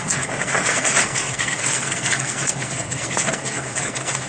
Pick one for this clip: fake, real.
fake